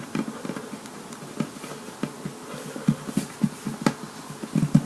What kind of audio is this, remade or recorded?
recorded